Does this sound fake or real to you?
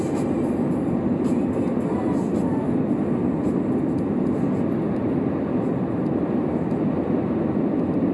real